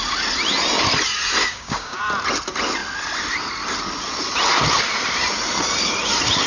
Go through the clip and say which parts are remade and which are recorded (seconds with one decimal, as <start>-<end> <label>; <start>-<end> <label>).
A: 0.0-1.4 recorded; 1.4-2.0 remade; 2.0-6.5 recorded

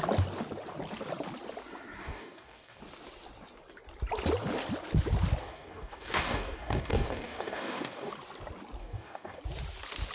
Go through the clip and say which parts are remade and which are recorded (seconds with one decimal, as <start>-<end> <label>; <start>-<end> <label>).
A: 0.0-2.0 recorded; 2.0-2.8 remade; 2.8-5.4 recorded; 5.4-8.1 remade; 8.1-8.8 recorded; 8.8-9.4 remade; 9.4-10.1 recorded

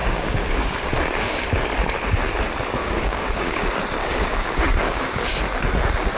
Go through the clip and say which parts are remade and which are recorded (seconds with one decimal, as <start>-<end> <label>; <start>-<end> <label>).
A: 0.0-0.9 remade; 0.9-2.8 recorded; 2.8-3.6 remade; 3.6-4.0 recorded; 4.0-5.4 remade; 5.4-6.2 recorded

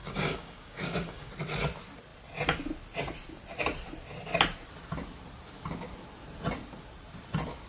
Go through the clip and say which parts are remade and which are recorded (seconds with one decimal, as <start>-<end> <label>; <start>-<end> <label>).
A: 0.0-1.3 remade; 1.3-7.7 recorded

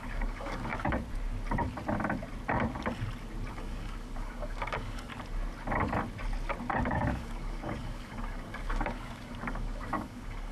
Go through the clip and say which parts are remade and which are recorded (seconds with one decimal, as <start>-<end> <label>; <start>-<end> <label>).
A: 0.0-0.7 remade; 0.7-3.5 recorded; 3.5-5.1 remade; 5.1-6.9 recorded; 6.9-10.5 remade

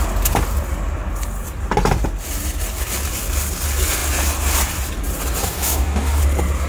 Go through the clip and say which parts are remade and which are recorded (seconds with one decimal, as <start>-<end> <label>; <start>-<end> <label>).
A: 0.0-5.4 recorded; 5.4-6.2 remade; 6.2-6.7 recorded

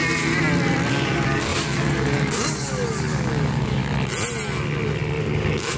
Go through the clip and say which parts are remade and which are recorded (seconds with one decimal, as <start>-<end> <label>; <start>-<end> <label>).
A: 0.0-0.9 recorded; 0.9-3.8 remade; 3.8-5.2 recorded; 5.2-5.8 remade

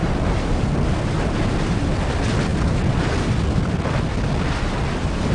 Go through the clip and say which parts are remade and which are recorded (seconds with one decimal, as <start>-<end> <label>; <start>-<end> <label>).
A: 0.0-5.3 recorded